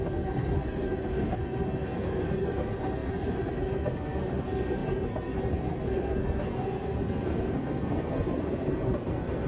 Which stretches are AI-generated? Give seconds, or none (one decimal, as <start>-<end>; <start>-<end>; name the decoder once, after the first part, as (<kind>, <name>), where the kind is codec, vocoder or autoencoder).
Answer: 0.0-9.5 (codec, SNAC)